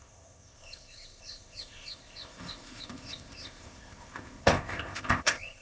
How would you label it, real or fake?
fake